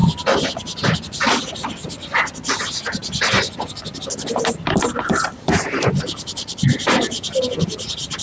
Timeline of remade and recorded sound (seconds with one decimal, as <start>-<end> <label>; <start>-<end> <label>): 0.0-5.3 recorded; 5.3-7.4 remade; 7.4-8.2 recorded